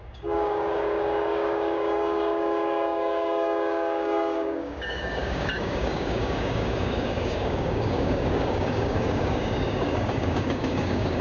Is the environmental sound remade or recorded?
remade